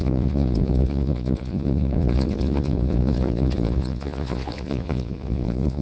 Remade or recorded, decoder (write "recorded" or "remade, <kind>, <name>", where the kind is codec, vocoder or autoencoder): remade, vocoder, Vocos